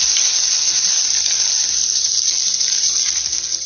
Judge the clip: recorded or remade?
recorded